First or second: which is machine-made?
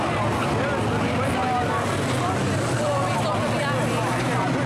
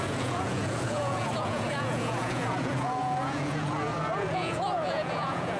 second